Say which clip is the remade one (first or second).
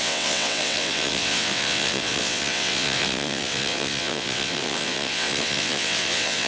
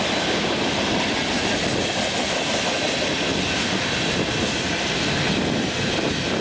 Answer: first